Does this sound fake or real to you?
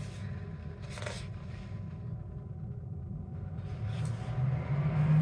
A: real